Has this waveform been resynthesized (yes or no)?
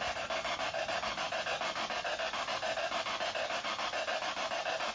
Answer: no